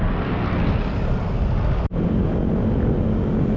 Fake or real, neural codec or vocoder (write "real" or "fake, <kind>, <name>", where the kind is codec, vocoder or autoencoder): real